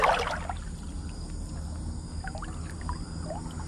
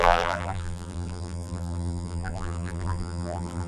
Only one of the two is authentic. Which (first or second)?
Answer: first